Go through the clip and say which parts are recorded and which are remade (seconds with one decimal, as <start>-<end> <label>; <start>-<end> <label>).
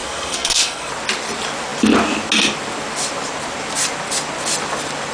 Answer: 0.0-0.9 remade; 0.9-5.1 recorded